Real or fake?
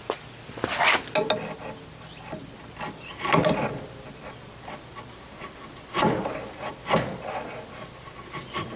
real